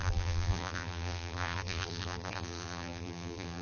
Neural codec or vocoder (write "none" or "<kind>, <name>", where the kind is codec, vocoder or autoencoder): vocoder, BigVGAN v2